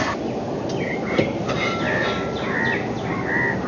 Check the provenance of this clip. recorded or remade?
recorded